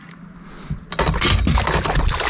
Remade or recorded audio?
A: recorded